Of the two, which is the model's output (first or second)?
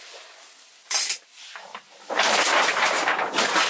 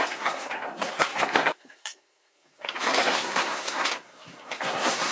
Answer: second